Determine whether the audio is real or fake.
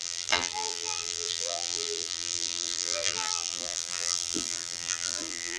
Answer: fake